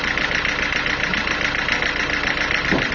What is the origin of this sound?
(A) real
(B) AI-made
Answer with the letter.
A